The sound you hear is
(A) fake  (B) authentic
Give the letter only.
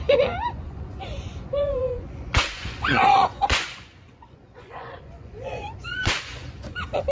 A